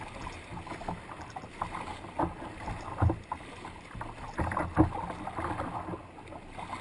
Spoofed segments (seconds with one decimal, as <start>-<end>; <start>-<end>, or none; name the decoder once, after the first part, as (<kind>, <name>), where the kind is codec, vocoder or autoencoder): none